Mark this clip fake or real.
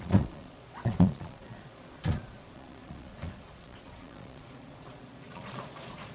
fake